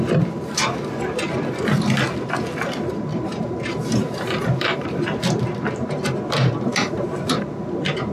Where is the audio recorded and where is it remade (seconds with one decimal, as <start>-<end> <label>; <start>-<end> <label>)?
0.0-3.1 recorded; 3.1-7.6 remade; 7.6-8.1 recorded